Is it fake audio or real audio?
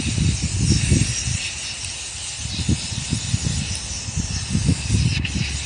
real